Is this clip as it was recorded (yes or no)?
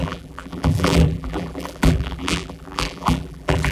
no